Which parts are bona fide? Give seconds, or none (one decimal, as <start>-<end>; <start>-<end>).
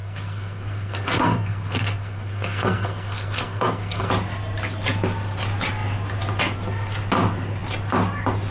4.1-8.5